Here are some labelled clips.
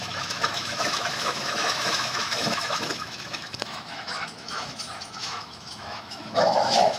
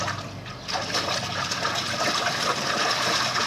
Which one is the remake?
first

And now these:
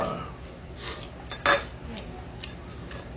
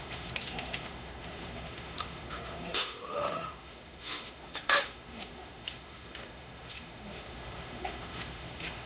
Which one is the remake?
second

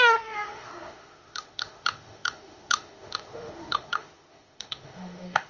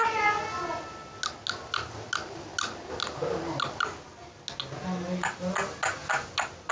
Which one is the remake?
first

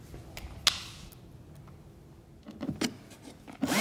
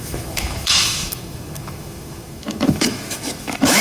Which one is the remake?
second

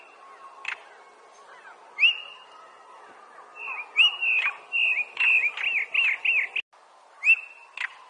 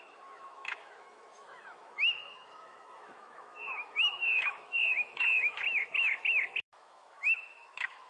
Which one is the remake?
second